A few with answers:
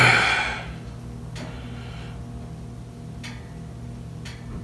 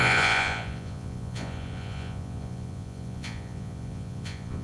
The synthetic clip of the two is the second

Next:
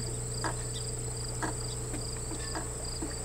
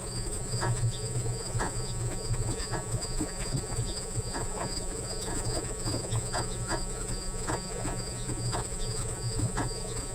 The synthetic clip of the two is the second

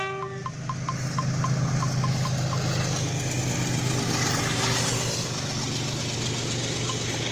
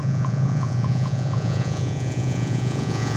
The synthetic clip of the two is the second